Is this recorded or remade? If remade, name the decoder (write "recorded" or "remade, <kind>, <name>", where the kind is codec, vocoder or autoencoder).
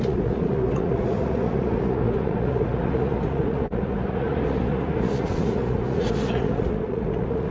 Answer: remade, vocoder, Vocos